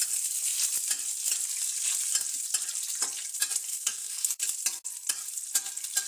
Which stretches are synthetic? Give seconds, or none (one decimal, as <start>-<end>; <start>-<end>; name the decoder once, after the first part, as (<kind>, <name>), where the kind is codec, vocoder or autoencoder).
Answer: 3.7-4.3 (codec, SNAC)